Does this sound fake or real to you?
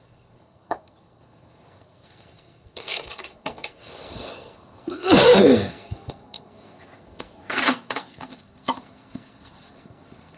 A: fake